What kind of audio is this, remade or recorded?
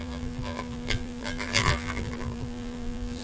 remade